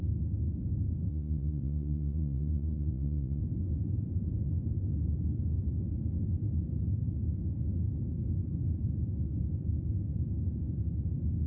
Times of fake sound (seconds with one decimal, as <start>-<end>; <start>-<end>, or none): 1.1-3.4